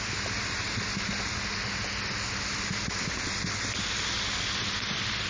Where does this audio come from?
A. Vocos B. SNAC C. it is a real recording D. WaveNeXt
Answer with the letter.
C